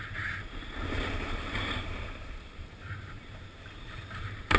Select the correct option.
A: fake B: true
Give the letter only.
A